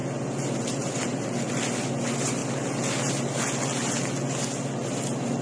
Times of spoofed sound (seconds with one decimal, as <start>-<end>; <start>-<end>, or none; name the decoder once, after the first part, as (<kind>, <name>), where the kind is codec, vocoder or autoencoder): none